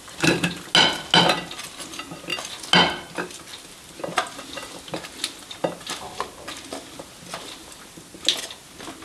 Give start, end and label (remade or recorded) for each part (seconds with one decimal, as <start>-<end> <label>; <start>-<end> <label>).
0.0-9.0 recorded